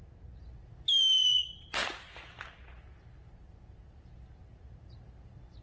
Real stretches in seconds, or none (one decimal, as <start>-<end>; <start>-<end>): 0.0-5.6